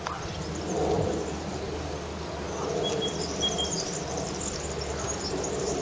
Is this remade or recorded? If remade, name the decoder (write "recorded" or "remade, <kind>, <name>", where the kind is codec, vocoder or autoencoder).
recorded